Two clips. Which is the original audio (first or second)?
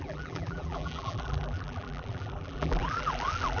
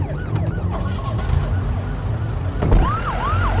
second